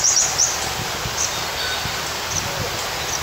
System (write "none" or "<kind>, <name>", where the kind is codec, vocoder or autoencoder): none